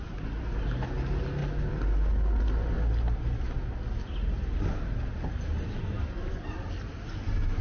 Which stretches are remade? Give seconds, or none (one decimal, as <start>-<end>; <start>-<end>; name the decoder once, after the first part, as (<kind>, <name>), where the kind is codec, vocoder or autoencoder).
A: none